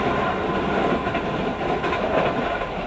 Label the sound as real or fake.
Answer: real